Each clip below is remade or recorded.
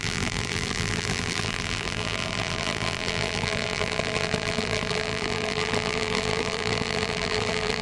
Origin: remade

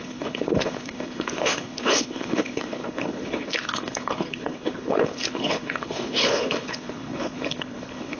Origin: remade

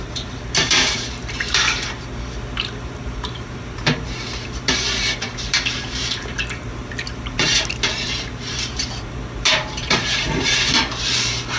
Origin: remade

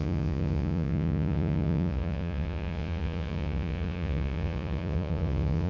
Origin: remade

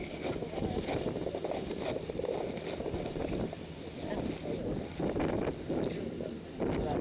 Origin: recorded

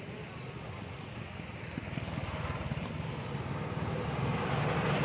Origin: recorded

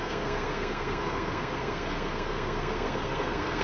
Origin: remade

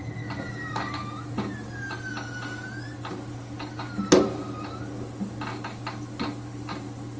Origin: recorded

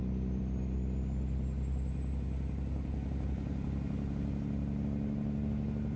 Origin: recorded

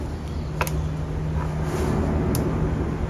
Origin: recorded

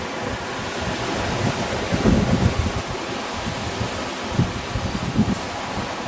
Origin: recorded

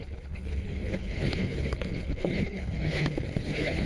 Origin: remade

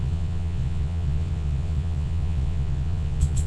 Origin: remade